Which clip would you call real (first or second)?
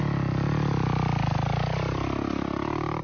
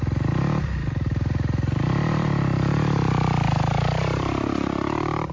first